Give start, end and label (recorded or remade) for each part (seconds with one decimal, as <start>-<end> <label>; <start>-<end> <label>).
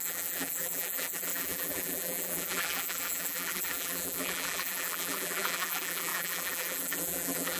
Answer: 0.0-7.6 remade